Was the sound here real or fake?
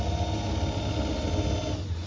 real